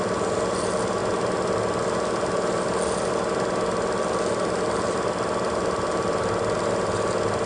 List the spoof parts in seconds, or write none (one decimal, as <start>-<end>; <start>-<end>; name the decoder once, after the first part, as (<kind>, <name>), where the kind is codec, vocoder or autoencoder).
none